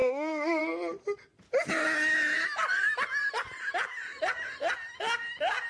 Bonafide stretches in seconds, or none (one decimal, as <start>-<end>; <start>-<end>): 0.6-5.7